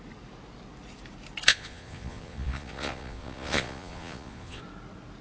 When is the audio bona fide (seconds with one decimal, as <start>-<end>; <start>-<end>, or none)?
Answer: 0.0-1.5; 4.6-5.2